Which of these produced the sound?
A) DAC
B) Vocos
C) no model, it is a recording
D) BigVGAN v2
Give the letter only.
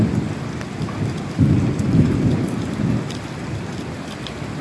D